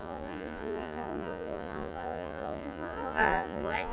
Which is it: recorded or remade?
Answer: remade